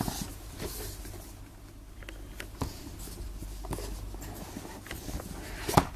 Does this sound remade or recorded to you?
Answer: recorded